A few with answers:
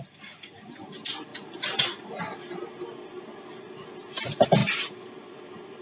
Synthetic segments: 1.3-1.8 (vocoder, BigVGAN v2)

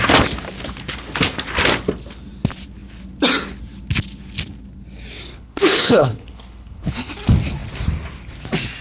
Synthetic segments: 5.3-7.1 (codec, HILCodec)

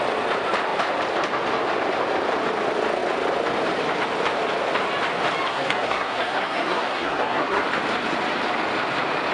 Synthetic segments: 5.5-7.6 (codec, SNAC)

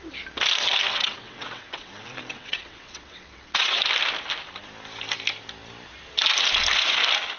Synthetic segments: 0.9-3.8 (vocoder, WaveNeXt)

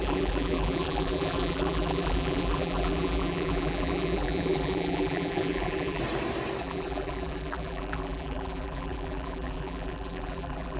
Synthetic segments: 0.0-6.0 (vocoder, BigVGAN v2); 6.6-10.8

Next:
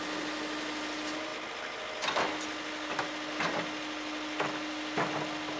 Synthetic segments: none

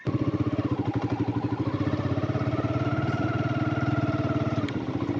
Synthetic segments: none

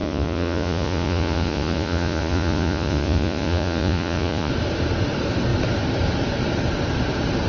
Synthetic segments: 0.0-4.5 (vocoder, Vocos)